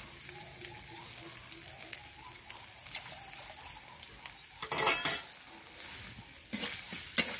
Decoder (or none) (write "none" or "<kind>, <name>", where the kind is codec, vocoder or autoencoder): none